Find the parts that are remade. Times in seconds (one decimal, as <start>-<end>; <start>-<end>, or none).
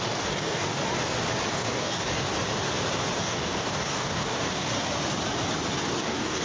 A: 0.0-0.8; 1.5-2.3; 3.2-4.7; 6.0-6.4